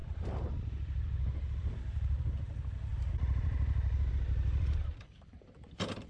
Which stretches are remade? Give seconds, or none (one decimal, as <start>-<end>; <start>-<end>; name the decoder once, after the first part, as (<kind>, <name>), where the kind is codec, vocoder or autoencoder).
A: 0.0-6.1 (vocoder, BigVGAN v2)